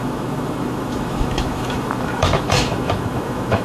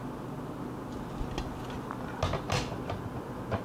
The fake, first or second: first